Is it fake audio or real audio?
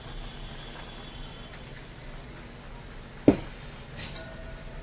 real